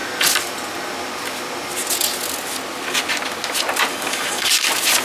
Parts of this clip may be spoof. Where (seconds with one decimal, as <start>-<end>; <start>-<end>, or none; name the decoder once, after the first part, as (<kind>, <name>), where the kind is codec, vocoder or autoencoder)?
3.9-4.5 (codec, DAC)